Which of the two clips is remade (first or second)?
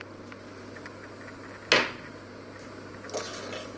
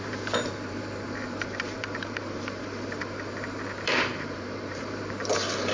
second